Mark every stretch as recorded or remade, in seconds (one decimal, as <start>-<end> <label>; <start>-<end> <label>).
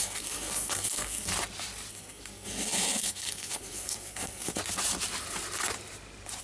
0.0-1.3 remade; 1.3-1.9 recorded; 1.9-4.6 remade; 4.6-6.4 recorded